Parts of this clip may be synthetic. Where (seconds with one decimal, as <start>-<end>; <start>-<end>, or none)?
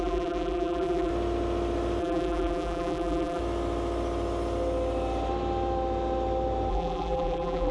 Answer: 0.0-1.1; 2.0-3.4; 6.7-7.7